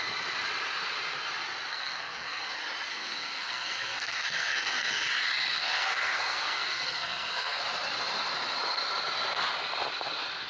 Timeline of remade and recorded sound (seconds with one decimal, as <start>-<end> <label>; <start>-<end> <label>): 0.0-1.7 recorded; 1.7-2.5 remade; 2.5-2.9 recorded; 2.9-5.1 remade; 5.1-5.5 recorded; 5.5-7.6 remade; 7.6-10.5 recorded